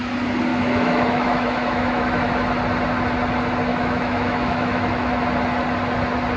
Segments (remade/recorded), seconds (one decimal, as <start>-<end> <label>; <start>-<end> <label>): 0.0-0.5 recorded; 0.5-2.3 remade; 2.3-3.7 recorded; 3.7-5.1 remade; 5.1-6.4 recorded